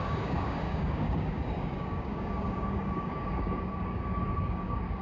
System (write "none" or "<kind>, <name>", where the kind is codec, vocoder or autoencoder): codec, DAC